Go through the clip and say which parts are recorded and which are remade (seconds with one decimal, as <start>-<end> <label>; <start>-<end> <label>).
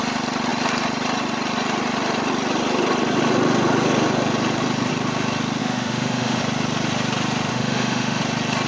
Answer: 0.0-5.6 recorded; 5.6-6.4 remade; 6.4-7.5 recorded; 7.5-8.2 remade; 8.2-8.7 recorded